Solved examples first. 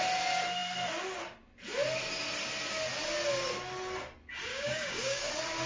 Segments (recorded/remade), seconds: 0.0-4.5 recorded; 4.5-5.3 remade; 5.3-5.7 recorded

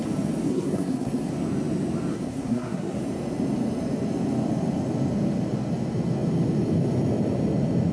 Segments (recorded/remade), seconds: 0.0-0.5 recorded; 0.5-1.3 remade; 1.3-2.1 recorded; 2.1-3.0 remade; 3.0-7.9 recorded

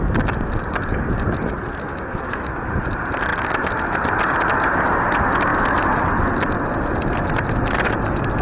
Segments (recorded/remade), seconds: 0.0-1.9 recorded; 1.9-2.7 remade; 2.7-8.4 recorded

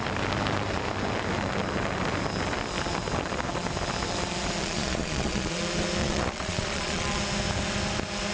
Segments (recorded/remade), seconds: 0.0-4.6 recorded; 4.6-5.6 remade; 5.6-6.0 recorded; 6.0-7.2 remade; 7.2-8.3 recorded

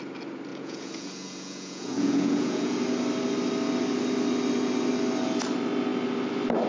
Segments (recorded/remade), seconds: 0.0-0.5 recorded; 0.5-2.7 remade; 2.7-6.7 recorded

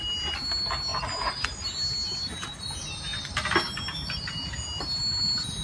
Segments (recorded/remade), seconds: 0.0-5.6 recorded

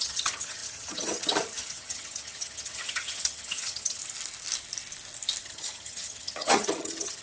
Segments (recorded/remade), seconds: 0.0-4.0 remade; 4.0-5.4 recorded; 5.4-7.2 remade

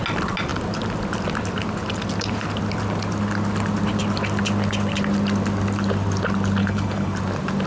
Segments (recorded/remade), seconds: 0.0-6.6 recorded; 6.6-7.1 remade; 7.1-7.7 recorded